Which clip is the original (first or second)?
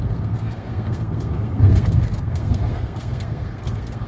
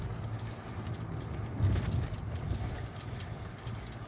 second